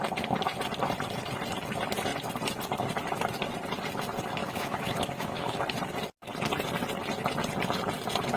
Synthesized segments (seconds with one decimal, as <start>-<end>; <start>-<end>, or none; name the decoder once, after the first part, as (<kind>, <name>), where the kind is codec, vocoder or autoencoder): 4.4-5.6 (autoencoder, DAC-VAE)